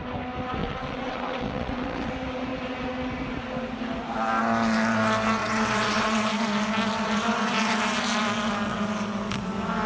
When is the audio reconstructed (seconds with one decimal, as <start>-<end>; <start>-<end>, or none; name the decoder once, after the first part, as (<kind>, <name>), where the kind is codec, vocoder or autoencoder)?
0.6-2.1 (vocoder, WaveNeXt); 5.4-6.3